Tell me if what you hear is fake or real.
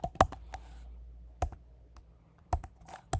real